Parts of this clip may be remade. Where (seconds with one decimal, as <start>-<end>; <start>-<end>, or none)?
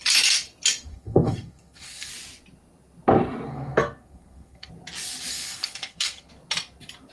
0.9-2.1; 3.5-4.7; 5.3-6.3